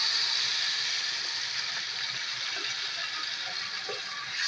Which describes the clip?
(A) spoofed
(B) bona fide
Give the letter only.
A